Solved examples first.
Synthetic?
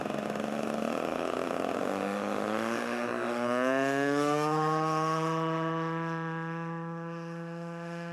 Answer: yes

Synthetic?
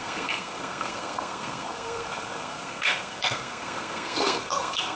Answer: yes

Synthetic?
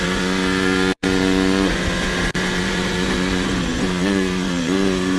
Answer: yes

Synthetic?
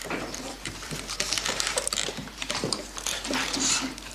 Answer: yes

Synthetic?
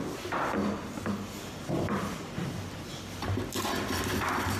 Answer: no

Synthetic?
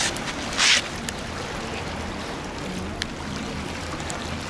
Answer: no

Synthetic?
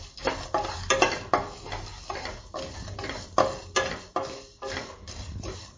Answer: no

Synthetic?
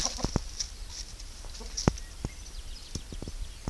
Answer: no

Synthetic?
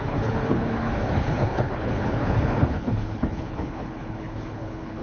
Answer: yes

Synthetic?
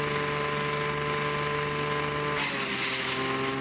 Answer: no